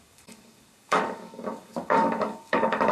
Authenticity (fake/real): fake